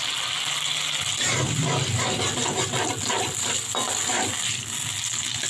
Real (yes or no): yes